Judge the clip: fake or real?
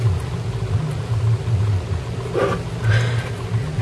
real